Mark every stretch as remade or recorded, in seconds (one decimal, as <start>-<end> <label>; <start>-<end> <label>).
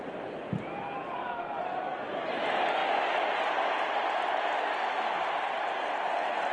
0.0-6.5 recorded